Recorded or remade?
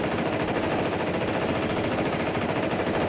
recorded